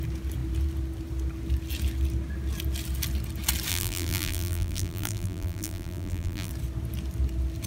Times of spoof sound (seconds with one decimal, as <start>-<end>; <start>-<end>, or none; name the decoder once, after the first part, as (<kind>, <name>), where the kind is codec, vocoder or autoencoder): 3.7-6.5 (vocoder, BigVGAN v2)